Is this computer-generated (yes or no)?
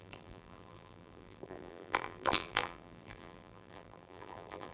yes